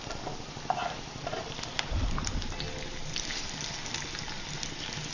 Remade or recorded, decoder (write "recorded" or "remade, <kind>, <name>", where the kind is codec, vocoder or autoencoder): recorded